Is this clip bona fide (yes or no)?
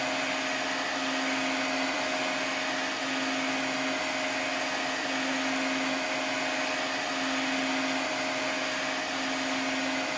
yes